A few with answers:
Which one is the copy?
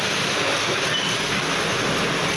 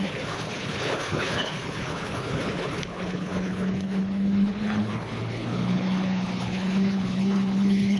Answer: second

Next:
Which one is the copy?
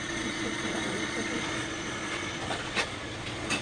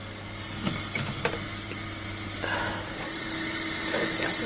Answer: first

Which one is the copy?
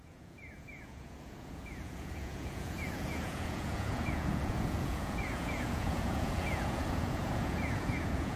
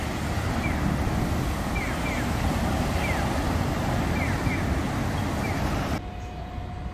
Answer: first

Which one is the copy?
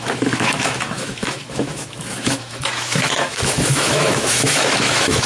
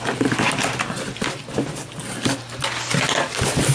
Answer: first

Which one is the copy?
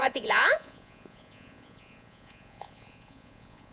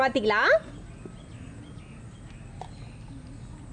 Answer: first